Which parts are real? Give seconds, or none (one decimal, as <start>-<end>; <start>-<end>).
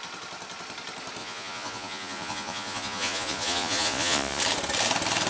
0.0-1.2; 4.4-5.3